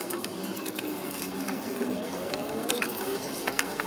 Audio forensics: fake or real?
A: fake